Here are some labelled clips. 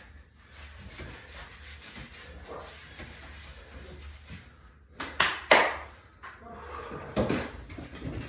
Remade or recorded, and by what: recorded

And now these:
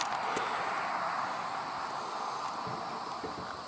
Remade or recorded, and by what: recorded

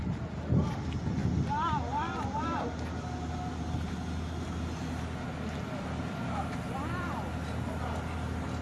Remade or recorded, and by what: recorded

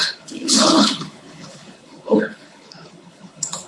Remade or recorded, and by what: remade, codec, HILCodec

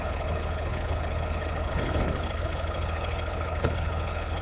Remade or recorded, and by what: remade, codec, HILCodec